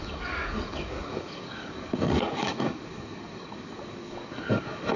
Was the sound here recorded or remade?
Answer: remade